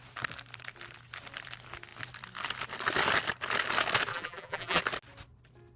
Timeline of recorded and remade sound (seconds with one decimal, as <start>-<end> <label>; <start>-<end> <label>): 0.0-4.1 recorded; 4.1-4.8 remade; 4.8-5.8 recorded